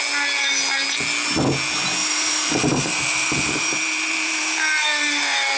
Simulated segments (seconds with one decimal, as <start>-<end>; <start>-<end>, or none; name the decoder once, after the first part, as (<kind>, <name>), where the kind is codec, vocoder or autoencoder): 2.0-5.6 (vocoder, BigVGAN v2)